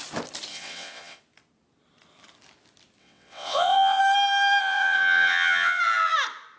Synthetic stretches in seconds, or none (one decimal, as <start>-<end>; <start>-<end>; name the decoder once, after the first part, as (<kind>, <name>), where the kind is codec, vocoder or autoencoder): 0.5-1.2 (vocoder, WaveNeXt); 3.0-4.0; 4.6-5.8